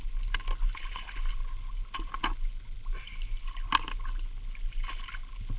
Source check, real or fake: real